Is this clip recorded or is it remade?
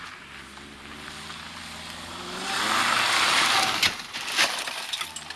recorded